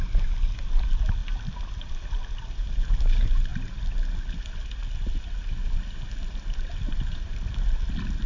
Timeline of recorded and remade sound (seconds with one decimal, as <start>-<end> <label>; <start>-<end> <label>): 0.0-8.3 recorded